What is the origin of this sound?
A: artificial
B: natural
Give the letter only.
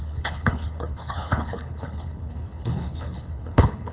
A